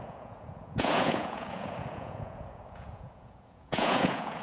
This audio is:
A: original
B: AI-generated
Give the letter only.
B